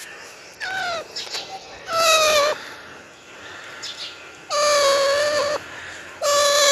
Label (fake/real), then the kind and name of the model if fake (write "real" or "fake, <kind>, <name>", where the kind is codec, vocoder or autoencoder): real